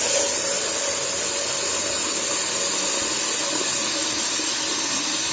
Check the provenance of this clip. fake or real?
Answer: real